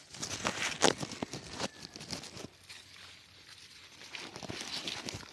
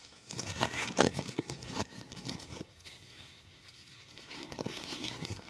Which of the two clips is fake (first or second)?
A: second